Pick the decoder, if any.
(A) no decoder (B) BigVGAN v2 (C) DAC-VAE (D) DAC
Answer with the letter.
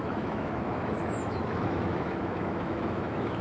C